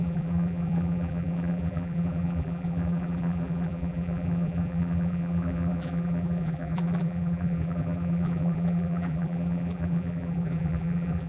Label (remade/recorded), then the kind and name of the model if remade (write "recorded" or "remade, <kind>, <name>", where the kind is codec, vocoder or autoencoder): remade, vocoder, BigVGAN v2